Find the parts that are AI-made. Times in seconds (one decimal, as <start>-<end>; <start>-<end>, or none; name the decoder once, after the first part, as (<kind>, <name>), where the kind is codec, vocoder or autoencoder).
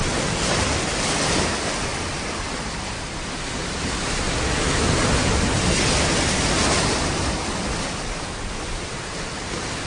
none